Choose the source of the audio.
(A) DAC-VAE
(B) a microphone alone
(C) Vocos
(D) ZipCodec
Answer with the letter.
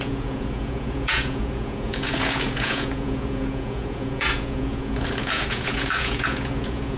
C